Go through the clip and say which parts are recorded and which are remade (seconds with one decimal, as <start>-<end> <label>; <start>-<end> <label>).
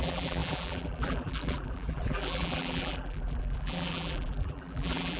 0.0-5.2 remade